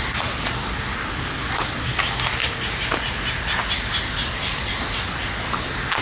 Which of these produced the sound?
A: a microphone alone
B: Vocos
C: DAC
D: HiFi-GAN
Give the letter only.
A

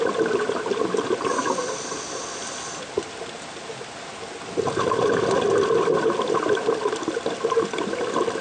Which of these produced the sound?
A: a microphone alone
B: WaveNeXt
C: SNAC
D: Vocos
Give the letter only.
A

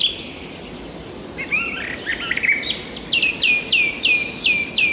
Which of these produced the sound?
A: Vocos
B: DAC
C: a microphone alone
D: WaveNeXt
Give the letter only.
C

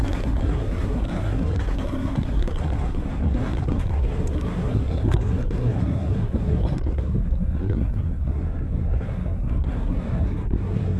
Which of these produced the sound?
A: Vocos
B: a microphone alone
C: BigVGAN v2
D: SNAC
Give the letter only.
D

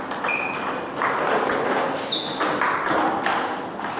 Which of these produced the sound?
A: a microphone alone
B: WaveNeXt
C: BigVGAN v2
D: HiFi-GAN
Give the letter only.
A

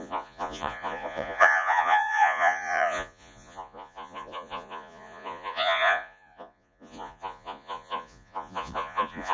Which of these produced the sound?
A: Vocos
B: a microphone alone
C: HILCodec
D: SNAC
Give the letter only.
A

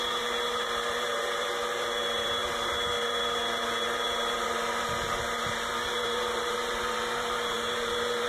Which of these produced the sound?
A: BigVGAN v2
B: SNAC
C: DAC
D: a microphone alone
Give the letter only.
A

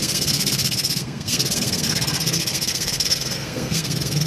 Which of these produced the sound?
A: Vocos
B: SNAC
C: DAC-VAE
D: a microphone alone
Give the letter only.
B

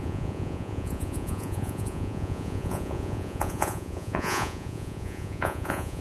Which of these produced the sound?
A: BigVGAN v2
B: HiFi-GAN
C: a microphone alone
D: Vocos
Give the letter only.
D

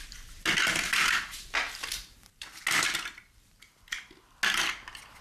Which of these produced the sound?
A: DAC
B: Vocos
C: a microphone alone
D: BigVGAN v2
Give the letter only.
C